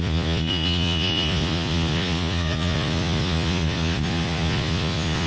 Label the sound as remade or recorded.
remade